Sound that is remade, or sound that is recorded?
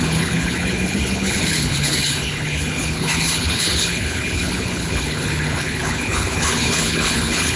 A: remade